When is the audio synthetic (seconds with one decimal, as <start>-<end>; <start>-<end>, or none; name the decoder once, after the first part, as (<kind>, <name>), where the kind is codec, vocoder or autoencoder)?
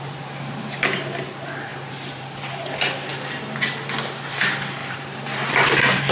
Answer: 1.7-2.6 (vocoder, BigVGAN v2); 4.8-6.1